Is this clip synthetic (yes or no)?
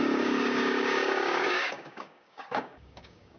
yes